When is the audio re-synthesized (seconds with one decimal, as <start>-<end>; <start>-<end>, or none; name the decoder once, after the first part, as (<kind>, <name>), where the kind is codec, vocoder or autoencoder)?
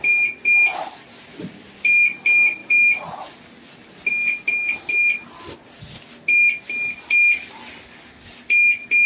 2.6-3.4 (vocoder, BigVGAN v2)